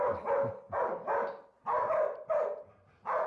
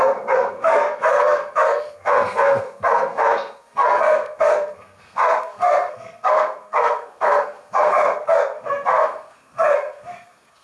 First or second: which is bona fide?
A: first